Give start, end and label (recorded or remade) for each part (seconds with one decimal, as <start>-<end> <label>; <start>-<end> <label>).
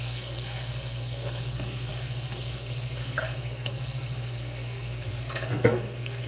0.0-6.3 remade